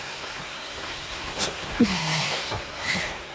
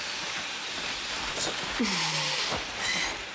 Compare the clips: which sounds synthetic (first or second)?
first